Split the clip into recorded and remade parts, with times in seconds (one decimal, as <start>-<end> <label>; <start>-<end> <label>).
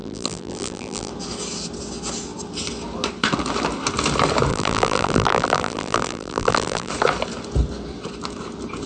0.0-1.1 remade; 1.1-4.5 recorded; 4.5-6.9 remade; 6.9-8.9 recorded